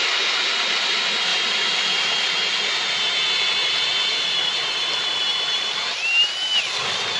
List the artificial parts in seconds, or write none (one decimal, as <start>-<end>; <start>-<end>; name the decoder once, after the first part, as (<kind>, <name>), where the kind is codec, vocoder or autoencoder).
none